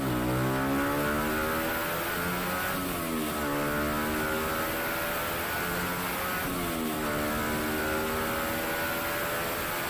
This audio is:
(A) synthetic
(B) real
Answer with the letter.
B